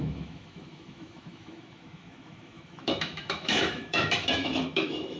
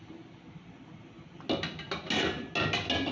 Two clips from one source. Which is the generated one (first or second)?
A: first